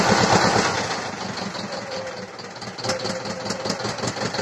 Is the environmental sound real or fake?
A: real